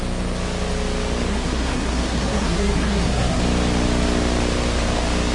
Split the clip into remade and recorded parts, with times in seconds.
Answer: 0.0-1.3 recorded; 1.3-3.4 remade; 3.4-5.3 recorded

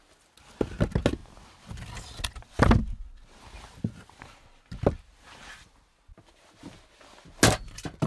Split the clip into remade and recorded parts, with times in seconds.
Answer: 0.0-8.1 recorded

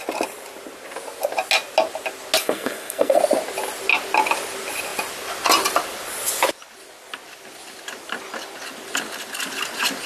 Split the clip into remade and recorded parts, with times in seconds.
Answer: 0.0-2.4 recorded; 2.4-3.2 remade; 3.2-10.1 recorded

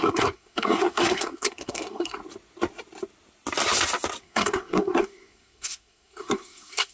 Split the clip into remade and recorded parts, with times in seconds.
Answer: 0.0-2.2 remade; 2.2-4.2 recorded; 4.2-6.9 remade

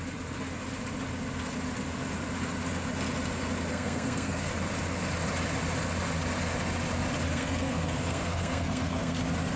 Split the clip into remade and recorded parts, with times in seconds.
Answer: 0.0-3.7 recorded; 3.7-4.5 remade; 4.5-7.3 recorded; 7.3-9.2 remade; 9.2-9.6 recorded

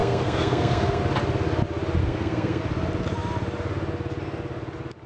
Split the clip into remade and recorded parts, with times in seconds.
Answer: 0.0-1.0 remade; 1.0-2.0 recorded; 2.0-2.6 remade; 2.6-5.1 recorded

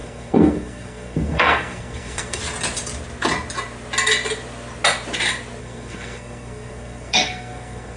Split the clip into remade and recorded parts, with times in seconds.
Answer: 0.0-2.4 remade; 2.4-5.6 recorded; 5.6-8.0 remade